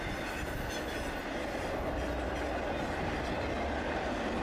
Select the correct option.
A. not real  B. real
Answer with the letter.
B